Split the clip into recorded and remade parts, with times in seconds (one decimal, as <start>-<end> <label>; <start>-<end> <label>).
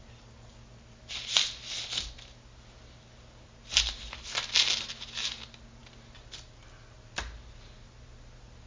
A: 0.0-8.7 recorded